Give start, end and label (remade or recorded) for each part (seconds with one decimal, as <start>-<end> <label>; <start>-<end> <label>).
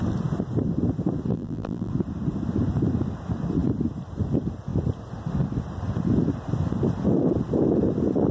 0.0-1.3 recorded; 1.3-1.9 remade; 1.9-8.3 recorded